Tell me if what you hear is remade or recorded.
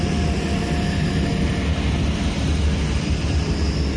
recorded